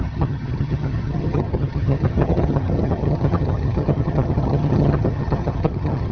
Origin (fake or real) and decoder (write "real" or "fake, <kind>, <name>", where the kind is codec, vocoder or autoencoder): fake, vocoder, HiFi-GAN